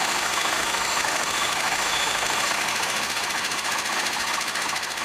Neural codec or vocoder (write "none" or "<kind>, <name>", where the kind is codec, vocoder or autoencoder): autoencoder, DAC-VAE